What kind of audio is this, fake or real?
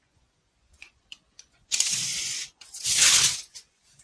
fake